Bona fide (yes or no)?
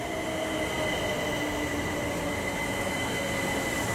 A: yes